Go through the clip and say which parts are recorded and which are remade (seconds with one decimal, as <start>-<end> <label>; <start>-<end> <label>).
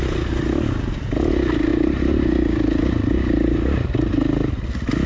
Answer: 0.0-5.1 recorded